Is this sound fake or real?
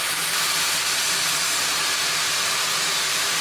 fake